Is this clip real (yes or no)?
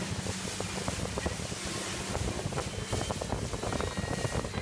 yes